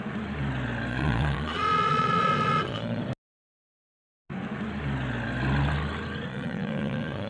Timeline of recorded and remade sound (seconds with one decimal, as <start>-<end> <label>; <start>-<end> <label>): 0.0-0.9 recorded; 0.9-3.0 remade; 3.0-6.3 recorded; 6.3-7.3 remade